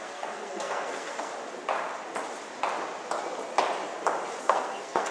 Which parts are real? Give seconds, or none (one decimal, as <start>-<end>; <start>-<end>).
1.3-4.4